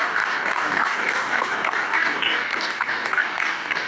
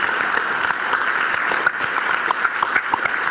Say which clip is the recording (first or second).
second